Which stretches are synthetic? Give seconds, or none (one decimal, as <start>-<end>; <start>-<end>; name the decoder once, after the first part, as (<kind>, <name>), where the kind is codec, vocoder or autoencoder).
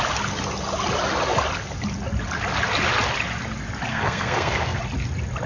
3.9-4.8 (codec, SNAC)